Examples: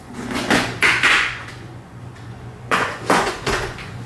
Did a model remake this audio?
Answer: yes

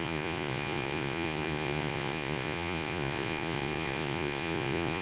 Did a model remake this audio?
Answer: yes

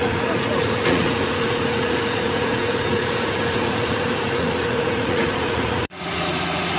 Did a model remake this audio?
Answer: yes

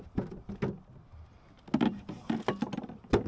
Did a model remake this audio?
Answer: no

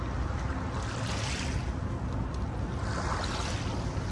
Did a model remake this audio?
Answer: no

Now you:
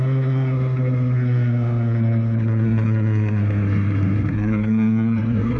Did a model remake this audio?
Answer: yes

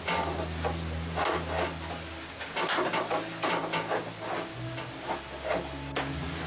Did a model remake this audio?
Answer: no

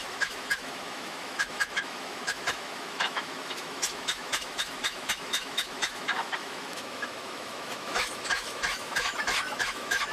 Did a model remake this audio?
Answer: yes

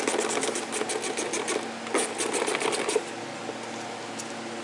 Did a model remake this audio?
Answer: no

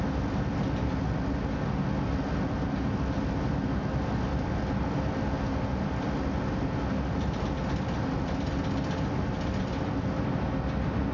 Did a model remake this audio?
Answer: no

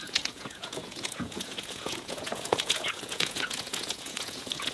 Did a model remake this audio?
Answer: yes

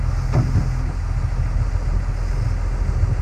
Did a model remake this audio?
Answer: no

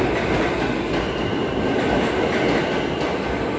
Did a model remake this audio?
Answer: no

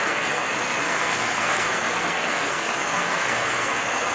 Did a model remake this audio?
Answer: yes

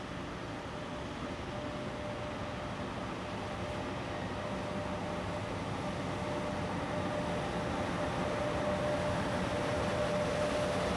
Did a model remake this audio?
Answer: no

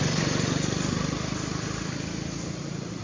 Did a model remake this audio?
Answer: no